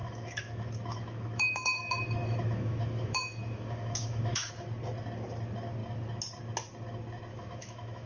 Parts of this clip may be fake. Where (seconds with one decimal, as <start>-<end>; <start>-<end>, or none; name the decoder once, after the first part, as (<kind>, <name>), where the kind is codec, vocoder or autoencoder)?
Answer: 0.0-4.5 (autoencoder, DAC-VAE); 7.3-8.1